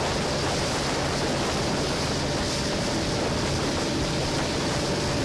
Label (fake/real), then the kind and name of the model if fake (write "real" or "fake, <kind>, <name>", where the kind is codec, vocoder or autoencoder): real